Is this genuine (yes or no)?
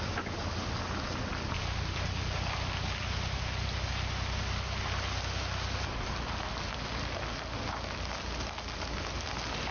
yes